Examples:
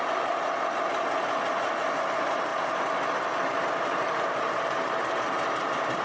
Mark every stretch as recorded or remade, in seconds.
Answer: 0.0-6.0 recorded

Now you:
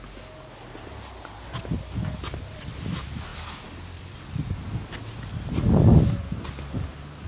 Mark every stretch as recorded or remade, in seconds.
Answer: 0.0-3.3 recorded; 3.3-4.0 remade; 4.0-7.3 recorded

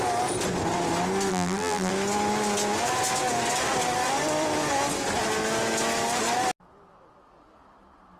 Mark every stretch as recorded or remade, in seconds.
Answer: 0.0-1.3 recorded; 1.3-1.9 remade; 1.9-8.2 recorded

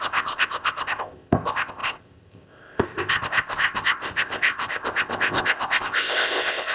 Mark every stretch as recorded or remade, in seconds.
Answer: 0.0-6.7 remade